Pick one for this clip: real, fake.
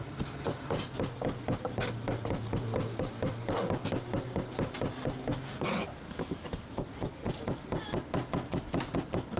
real